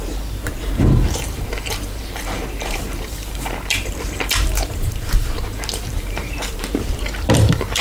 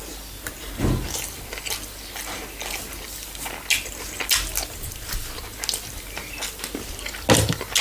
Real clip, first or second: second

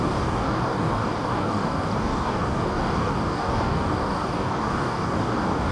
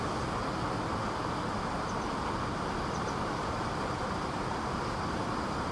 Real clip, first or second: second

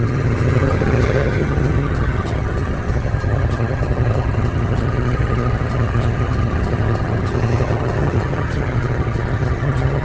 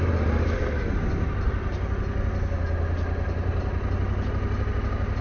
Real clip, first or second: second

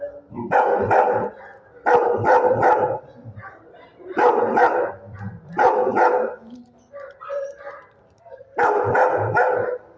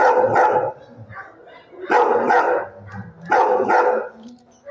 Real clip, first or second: second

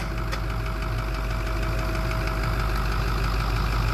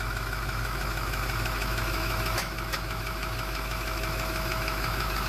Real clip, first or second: first